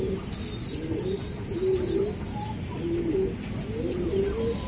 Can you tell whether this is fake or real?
real